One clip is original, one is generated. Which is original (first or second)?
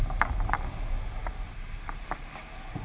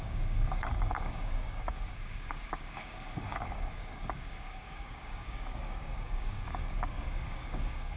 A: first